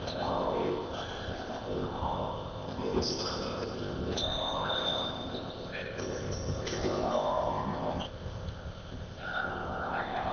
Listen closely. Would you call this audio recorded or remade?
remade